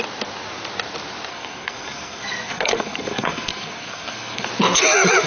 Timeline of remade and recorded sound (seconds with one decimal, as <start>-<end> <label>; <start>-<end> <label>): 0.0-1.3 recorded; 1.3-4.5 remade; 4.5-5.3 recorded